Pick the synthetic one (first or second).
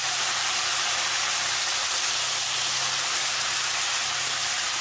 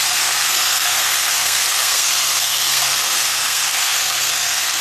second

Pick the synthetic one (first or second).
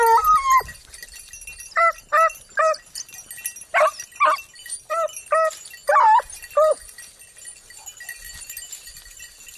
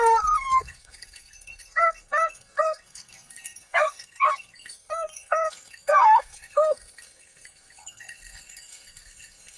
second